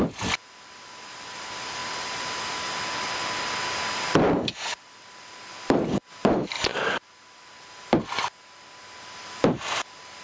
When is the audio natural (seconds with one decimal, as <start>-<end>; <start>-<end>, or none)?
0.0-10.2